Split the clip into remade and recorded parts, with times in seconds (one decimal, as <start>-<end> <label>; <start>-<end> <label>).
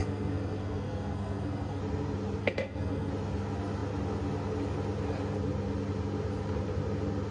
0.0-1.8 remade; 1.8-2.4 recorded; 2.4-3.1 remade; 3.1-7.3 recorded